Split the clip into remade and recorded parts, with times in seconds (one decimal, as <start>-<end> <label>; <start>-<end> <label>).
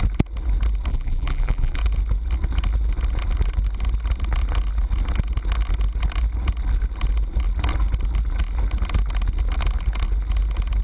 0.0-0.9 recorded; 0.9-1.8 remade; 1.8-10.8 recorded